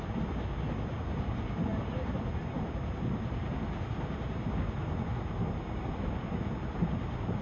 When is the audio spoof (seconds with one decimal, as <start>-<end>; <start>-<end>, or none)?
none